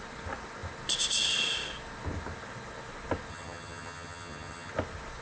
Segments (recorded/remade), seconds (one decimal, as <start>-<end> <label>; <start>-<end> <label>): 0.0-3.3 recorded; 3.3-4.7 remade; 4.7-5.2 recorded